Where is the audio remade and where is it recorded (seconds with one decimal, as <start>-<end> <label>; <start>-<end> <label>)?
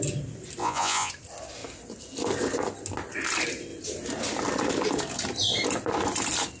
0.0-0.6 recorded; 0.6-1.1 remade; 1.1-6.6 recorded